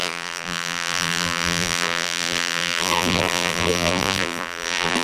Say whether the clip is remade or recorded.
remade